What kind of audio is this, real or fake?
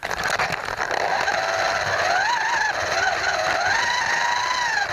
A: real